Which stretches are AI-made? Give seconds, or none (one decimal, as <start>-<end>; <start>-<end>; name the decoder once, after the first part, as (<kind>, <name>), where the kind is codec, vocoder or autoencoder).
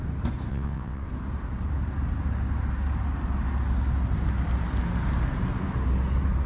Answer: 0.5-1.1 (vocoder, WaveNeXt)